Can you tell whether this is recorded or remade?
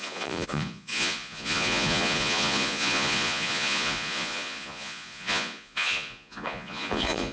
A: remade